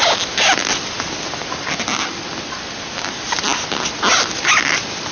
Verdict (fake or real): real